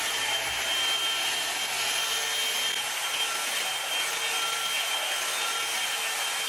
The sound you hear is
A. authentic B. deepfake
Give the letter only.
A